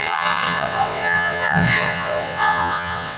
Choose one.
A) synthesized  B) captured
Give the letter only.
A